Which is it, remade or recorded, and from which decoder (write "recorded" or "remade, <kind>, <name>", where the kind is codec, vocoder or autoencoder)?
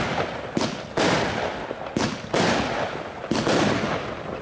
recorded